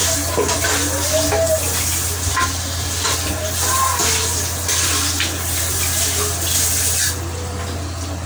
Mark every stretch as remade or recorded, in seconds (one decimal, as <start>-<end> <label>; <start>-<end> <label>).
0.0-8.3 recorded